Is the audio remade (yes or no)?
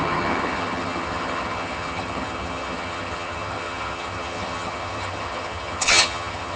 yes